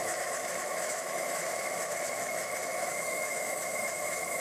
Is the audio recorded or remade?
remade